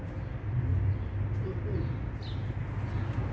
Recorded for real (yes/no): yes